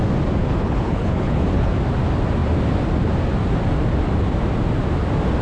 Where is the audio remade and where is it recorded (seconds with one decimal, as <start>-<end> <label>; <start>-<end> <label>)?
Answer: 0.0-0.4 recorded; 0.4-1.7 remade; 1.7-5.4 recorded